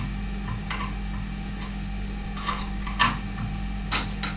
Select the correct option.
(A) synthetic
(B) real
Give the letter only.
B